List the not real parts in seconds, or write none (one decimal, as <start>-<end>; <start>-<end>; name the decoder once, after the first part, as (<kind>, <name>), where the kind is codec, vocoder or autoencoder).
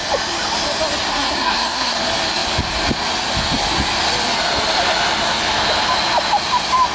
1.1-2.0 (codec, SNAC)